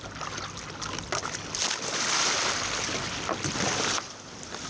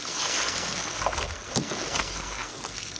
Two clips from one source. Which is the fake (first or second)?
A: second